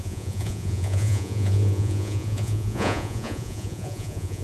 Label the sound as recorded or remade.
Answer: remade